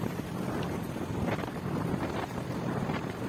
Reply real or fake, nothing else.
real